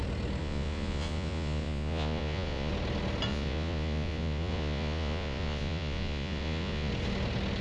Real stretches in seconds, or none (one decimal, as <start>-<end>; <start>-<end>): 0.0-0.4; 2.7-3.3; 6.9-7.6